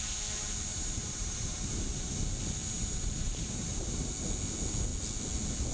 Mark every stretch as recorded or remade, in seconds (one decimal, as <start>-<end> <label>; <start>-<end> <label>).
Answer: 0.0-0.7 recorded; 0.7-2.2 remade; 2.2-2.6 recorded; 2.6-4.1 remade; 4.1-5.7 recorded